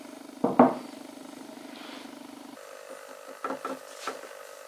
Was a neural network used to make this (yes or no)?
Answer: no